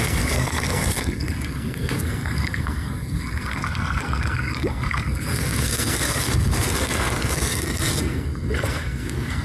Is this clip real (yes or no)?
no